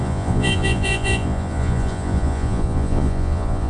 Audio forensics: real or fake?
fake